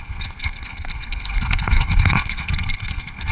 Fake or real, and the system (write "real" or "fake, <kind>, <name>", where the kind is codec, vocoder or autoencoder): fake, codec, SNAC